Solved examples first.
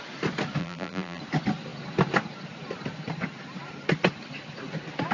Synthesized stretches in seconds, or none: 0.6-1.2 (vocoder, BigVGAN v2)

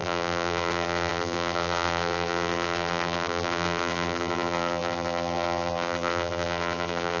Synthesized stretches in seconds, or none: 0.0-7.2 (vocoder, BigVGAN v2)